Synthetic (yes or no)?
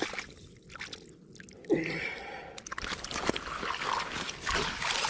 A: no